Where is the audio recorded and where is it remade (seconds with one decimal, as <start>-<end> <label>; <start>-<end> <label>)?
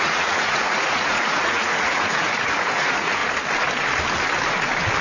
0.0-3.2 remade; 3.2-5.0 recorded